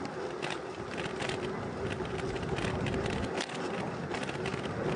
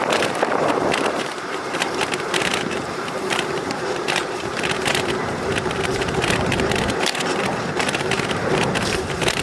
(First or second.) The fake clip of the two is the second